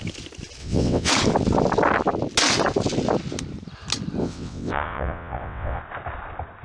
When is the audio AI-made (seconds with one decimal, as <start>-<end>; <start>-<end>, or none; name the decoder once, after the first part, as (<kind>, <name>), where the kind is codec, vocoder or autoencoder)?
0.6-1.1 (vocoder, WaveNeXt); 4.2-5.8